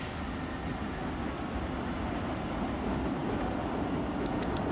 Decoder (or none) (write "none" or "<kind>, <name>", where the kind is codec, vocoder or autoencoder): none